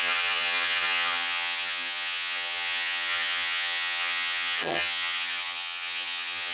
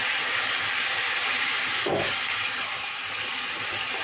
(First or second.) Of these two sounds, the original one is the second